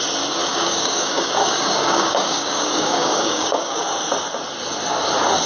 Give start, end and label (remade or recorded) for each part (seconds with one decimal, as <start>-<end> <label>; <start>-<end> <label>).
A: 0.0-0.5 recorded; 0.5-3.8 remade; 3.8-5.5 recorded